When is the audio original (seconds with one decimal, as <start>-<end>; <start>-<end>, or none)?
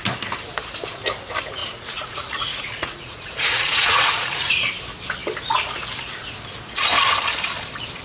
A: 0.0-1.6; 4.6-8.0